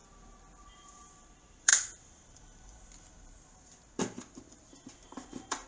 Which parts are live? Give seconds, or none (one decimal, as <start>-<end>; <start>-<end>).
0.0-0.5